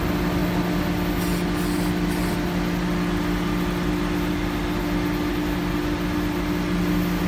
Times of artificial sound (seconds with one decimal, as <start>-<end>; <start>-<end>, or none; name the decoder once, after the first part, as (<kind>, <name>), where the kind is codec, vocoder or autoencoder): none